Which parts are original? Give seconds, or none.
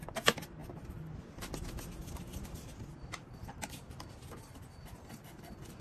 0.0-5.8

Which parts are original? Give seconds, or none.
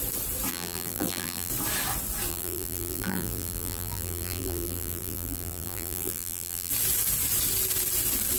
0.0-0.5; 1.5-2.3; 6.7-8.4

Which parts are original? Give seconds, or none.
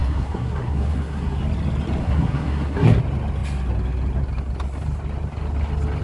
1.4-2.0; 3.0-6.0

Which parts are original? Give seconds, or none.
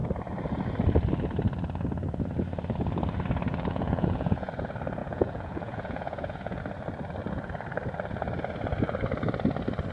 0.0-3.5; 4.5-5.0; 6.6-9.9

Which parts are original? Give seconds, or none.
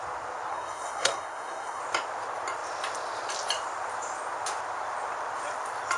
0.0-0.5; 1.8-6.0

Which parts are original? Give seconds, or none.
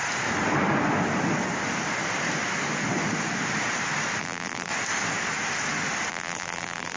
0.0-4.2; 4.7-6.1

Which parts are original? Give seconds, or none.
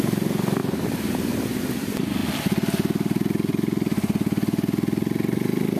0.0-0.6; 1.6-5.8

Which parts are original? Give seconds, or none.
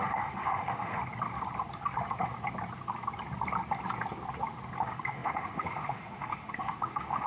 1.0-4.8